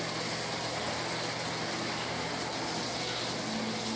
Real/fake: real